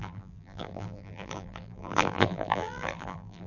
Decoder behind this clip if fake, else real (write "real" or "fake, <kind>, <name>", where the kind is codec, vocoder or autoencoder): fake, vocoder, BigVGAN v2